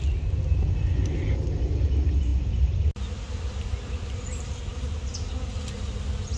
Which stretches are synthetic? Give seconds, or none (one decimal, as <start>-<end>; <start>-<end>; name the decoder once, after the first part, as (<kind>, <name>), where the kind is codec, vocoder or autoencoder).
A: none